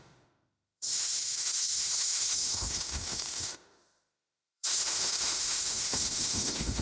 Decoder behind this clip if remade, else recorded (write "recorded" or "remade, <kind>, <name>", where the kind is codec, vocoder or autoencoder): remade, autoencoder, DAC-VAE